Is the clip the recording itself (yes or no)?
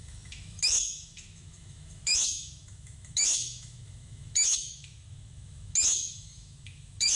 no